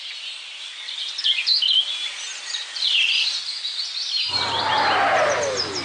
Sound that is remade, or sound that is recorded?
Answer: recorded